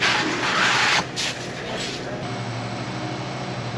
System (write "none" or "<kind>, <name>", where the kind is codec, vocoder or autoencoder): none